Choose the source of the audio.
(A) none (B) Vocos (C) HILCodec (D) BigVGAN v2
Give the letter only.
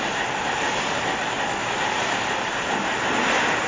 A